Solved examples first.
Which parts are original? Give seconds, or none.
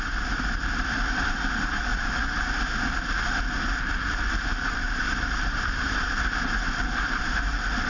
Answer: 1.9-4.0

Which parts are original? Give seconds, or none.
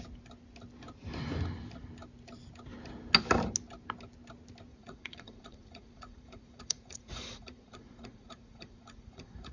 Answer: 0.0-4.7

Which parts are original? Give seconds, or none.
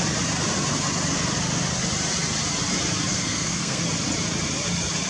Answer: 0.0-3.1; 3.8-5.1